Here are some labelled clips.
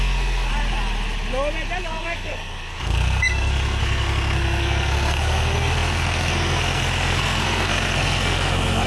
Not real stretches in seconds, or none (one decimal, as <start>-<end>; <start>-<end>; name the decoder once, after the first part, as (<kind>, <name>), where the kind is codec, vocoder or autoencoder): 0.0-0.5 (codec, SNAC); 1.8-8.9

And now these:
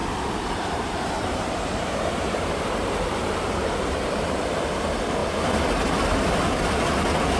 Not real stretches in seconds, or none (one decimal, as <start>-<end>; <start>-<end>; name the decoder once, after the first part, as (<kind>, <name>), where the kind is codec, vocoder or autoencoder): 0.0-4.4 (vocoder, BigVGAN v2)

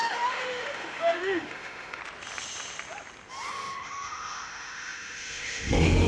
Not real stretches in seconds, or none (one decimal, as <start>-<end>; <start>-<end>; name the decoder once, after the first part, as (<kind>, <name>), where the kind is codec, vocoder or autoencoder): 0.0-2.0 (autoencoder, DAC-VAE); 3.5-6.1

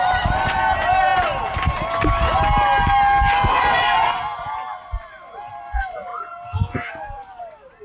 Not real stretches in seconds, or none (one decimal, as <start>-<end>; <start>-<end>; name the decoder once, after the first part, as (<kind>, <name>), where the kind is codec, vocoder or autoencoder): 0.0-1.1 (vocoder, BigVGAN v2); 5.5-6.1; 6.9-7.8

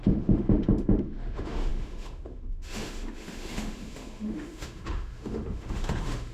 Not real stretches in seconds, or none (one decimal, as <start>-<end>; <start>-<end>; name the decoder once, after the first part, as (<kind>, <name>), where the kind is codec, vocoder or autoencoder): 0.0-6.3 (autoencoder, DAC-VAE)